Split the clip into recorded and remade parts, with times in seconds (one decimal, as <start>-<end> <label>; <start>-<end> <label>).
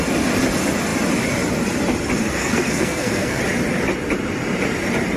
0.0-2.4 recorded; 2.4-3.4 remade; 3.4-5.2 recorded